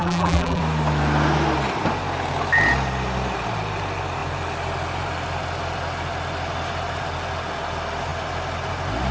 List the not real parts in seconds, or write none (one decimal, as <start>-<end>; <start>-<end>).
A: 0.0-0.6